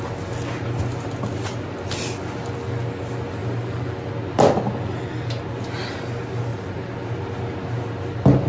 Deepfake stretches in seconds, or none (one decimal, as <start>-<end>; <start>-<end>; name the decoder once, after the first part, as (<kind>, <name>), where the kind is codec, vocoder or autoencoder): 3.4-4.1 (vocoder, BigVGAN v2); 6.5-7.1